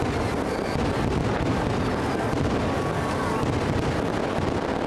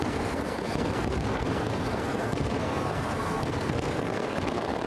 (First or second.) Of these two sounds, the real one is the first